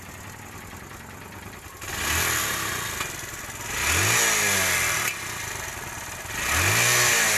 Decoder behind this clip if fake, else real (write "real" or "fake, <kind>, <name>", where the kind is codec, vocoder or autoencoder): real